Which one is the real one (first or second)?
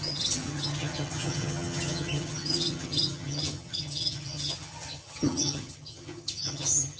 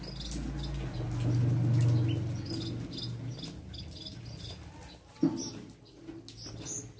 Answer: second